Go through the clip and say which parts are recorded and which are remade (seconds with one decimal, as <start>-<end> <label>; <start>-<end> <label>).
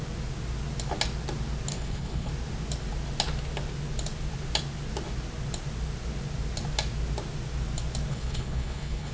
0.0-1.7 recorded; 1.7-2.3 remade; 2.3-8.1 recorded; 8.1-9.1 remade